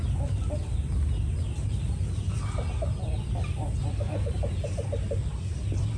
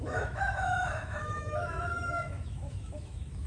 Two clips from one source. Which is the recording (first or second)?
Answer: first